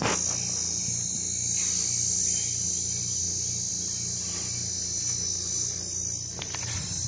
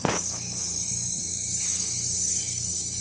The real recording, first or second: first